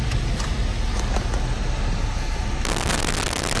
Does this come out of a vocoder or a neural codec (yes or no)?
no